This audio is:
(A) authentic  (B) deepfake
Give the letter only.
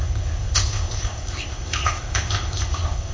B